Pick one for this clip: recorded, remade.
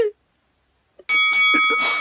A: recorded